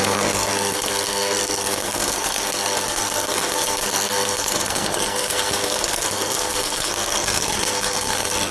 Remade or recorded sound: remade